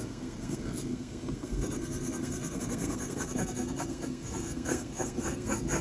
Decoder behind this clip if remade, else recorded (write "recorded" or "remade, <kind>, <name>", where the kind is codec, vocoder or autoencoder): remade, codec, SNAC